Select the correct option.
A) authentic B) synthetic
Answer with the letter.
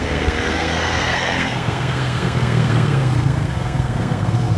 B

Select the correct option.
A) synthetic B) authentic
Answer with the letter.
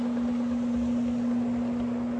B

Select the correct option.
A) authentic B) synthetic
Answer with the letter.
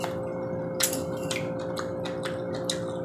A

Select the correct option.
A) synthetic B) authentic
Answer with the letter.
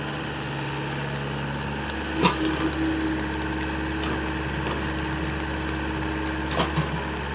B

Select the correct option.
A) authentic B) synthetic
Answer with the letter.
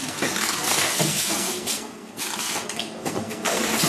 B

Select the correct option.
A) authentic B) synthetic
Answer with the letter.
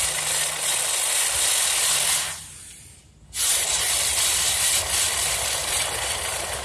A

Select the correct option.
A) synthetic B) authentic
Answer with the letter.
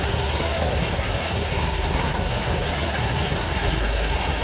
A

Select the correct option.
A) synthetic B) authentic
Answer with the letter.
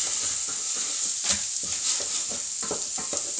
B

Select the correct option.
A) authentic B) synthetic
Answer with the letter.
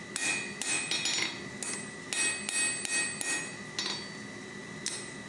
A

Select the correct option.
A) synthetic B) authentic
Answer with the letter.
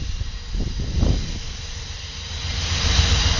B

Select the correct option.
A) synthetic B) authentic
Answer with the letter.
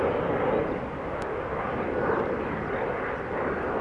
B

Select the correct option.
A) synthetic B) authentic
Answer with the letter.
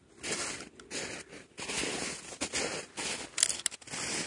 B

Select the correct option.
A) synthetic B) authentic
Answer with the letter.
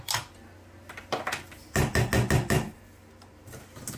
B